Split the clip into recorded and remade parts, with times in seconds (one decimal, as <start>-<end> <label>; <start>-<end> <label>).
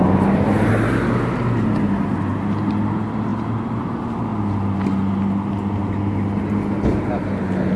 0.0-7.8 recorded